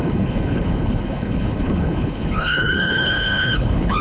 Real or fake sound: fake